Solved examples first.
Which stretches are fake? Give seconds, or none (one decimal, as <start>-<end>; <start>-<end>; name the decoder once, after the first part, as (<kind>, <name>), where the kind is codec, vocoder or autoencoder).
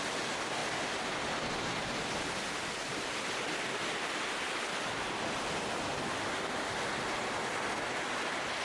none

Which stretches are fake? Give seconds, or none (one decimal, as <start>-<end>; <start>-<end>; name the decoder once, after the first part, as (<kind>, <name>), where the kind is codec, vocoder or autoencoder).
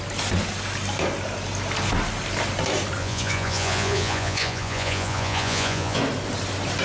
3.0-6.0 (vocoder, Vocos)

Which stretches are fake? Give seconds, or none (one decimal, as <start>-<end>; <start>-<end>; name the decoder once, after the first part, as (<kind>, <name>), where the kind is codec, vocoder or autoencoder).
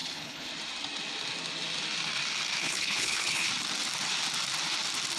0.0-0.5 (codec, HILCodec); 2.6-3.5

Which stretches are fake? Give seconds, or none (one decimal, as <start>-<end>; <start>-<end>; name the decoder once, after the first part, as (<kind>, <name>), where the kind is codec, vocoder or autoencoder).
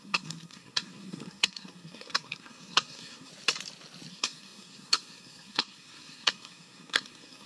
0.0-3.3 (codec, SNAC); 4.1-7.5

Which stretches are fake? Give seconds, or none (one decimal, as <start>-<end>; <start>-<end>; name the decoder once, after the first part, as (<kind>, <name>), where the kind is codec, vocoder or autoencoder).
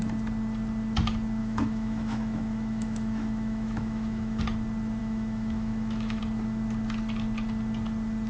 1.4-4.4 (autoencoder, DAC-VAE); 5.0-6.2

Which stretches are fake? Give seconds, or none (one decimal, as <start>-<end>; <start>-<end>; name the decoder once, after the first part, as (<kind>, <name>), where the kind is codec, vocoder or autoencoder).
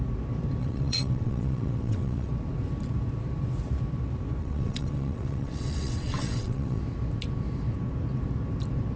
0.6-2.3 (vocoder, WaveNeXt); 4.4-6.8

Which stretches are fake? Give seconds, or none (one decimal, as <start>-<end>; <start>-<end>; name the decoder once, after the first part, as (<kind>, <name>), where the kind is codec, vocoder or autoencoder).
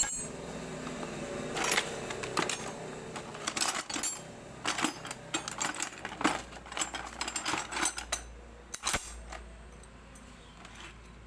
none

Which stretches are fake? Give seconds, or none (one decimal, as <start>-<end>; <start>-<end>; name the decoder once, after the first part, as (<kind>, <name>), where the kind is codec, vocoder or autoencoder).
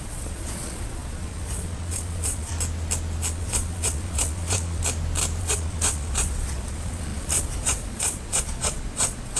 0.0-2.5 (vocoder, Vocos); 3.3-4.8; 5.4-9.4